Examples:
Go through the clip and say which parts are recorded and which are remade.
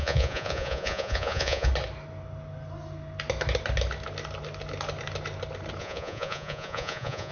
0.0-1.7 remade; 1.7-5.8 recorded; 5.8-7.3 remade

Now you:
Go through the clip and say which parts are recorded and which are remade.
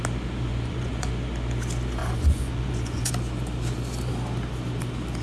0.0-0.5 recorded; 0.5-1.1 remade; 1.1-2.0 recorded; 2.0-3.1 remade; 3.1-5.2 recorded